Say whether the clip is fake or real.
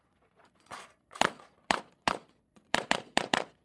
fake